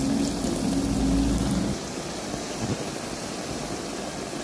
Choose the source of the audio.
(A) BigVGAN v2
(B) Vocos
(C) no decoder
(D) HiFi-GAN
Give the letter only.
C